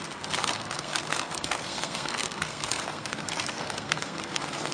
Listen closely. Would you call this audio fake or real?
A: fake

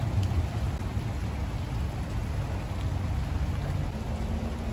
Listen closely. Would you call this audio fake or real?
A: real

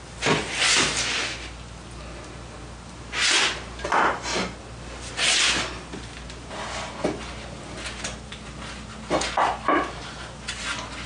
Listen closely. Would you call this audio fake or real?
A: real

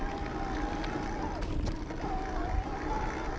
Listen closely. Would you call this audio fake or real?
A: real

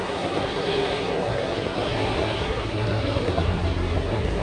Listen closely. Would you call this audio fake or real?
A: fake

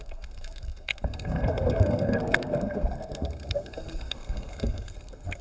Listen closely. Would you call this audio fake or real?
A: fake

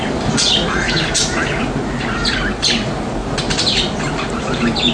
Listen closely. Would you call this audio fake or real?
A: real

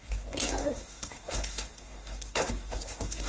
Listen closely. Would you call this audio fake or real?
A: fake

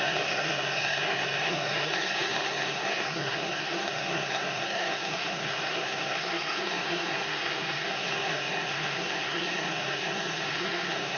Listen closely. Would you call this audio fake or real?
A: fake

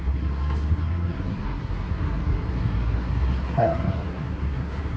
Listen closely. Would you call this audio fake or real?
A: fake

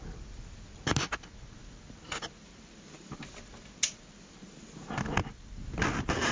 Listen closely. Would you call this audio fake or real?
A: real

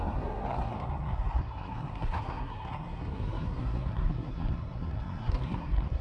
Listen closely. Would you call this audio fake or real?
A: fake